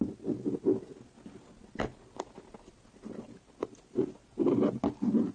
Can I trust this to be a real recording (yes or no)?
yes